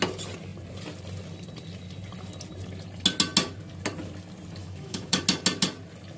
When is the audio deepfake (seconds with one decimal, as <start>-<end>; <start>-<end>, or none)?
4.6-5.2